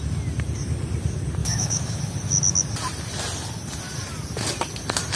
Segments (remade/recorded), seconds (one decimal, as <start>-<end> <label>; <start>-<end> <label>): 0.0-1.4 recorded; 1.4-2.0 remade; 2.0-5.2 recorded